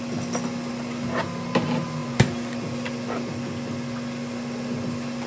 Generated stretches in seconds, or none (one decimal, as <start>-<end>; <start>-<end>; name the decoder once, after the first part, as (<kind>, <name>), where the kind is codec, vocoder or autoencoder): none